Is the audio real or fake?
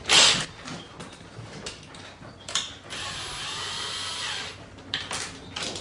real